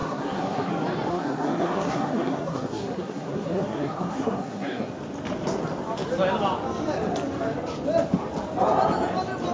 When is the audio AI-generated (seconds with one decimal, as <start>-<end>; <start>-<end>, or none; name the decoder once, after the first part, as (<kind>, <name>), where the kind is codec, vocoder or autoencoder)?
0.0-0.7 (codec, SNAC); 1.1-4.9